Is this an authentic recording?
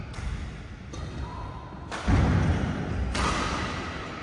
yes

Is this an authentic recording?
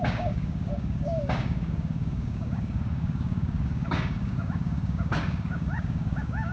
no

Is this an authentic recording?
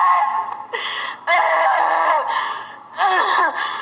yes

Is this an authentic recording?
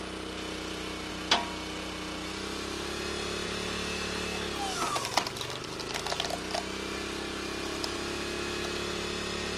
yes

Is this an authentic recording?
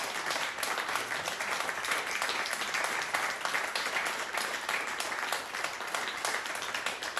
yes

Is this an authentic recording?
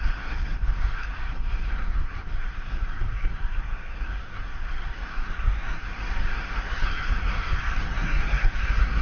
no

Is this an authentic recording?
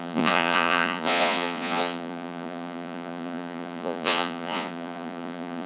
no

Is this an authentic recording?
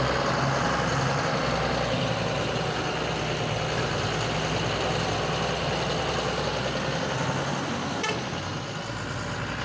yes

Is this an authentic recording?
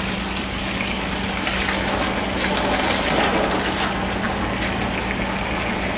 yes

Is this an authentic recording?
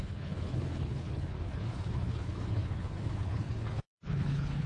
no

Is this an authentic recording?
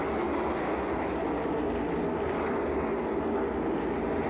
yes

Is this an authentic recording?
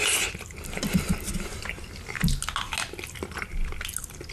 yes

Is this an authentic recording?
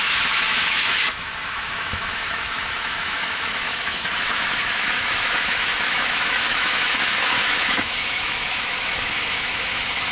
no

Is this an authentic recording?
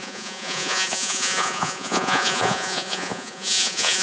no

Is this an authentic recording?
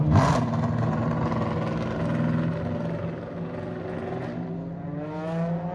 yes